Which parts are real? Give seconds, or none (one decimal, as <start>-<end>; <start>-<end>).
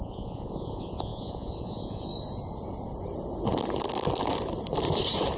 2.1-5.4